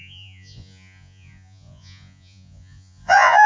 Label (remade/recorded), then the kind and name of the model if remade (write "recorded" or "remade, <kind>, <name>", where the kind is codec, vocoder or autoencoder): remade, vocoder, Vocos